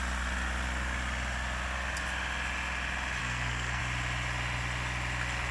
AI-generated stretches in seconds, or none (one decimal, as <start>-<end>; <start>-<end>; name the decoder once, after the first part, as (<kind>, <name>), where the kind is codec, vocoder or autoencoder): 3.2-3.8 (codec, SNAC)